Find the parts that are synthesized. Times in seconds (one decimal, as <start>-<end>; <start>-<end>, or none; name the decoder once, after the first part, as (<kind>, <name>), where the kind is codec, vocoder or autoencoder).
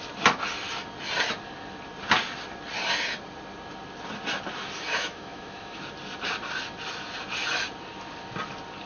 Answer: 4.9-5.8 (autoencoder, DAC-VAE)